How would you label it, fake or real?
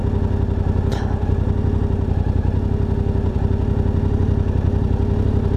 real